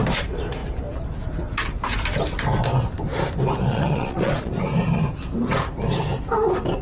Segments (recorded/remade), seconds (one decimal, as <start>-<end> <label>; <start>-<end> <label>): 0.0-3.6 recorded; 3.6-4.5 remade; 4.5-6.8 recorded